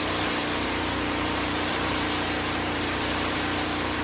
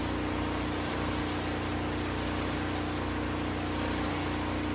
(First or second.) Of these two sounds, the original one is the second